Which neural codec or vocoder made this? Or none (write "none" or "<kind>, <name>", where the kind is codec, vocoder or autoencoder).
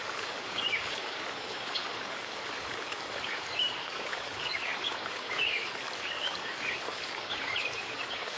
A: codec, DAC